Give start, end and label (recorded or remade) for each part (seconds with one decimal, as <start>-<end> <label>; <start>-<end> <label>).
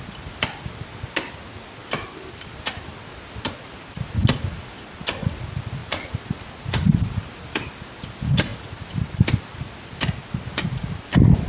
0.0-1.8 recorded; 1.8-2.8 remade; 2.8-5.8 recorded; 5.8-6.5 remade; 6.5-8.5 recorded; 8.5-9.6 remade; 9.6-11.5 recorded